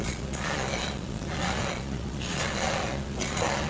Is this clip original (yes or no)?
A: no